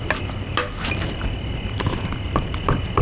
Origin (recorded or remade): recorded